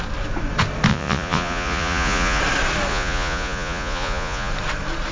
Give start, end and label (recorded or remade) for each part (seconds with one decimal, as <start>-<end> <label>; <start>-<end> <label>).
0.0-0.9 recorded; 0.9-2.4 remade; 2.4-2.9 recorded; 2.9-4.5 remade; 4.5-5.1 recorded